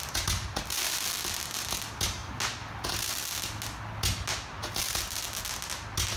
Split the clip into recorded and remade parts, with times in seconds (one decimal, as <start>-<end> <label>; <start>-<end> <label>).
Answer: 0.0-6.2 recorded